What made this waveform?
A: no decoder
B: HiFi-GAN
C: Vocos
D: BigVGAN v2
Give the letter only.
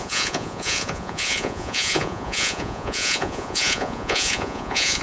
C